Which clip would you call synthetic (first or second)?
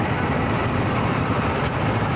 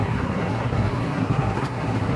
second